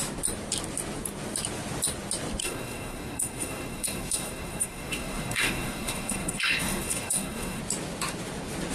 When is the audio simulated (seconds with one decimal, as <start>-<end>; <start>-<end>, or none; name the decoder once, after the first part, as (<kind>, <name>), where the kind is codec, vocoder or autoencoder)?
2.4-7.6 (codec, SNAC)